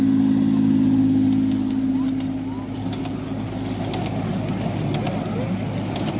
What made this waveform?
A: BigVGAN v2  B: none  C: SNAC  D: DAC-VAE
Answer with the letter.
B